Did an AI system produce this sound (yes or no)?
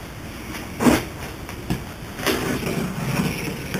no